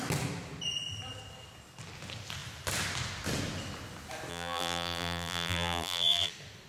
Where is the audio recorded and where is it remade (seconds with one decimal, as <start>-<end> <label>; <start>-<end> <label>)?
0.0-4.3 recorded; 4.3-6.3 remade; 6.3-6.7 recorded